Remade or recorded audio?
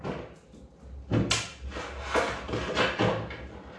recorded